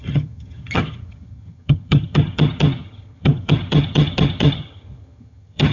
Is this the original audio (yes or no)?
no